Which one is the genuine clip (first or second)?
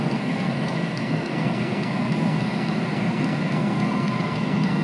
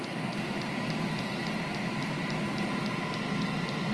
second